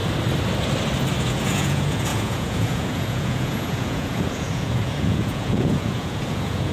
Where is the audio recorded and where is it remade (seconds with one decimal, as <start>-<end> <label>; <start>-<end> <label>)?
0.0-1.2 recorded; 1.2-6.7 remade